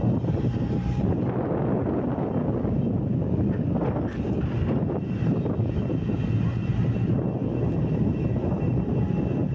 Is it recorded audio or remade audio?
recorded